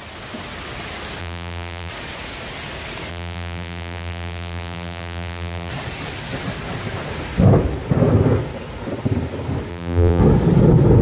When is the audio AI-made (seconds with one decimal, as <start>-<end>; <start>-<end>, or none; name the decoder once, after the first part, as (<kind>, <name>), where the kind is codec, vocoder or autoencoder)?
1.2-1.9 (vocoder, BigVGAN v2); 3.1-5.7; 9.7-10.2